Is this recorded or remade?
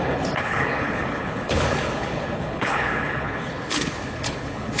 remade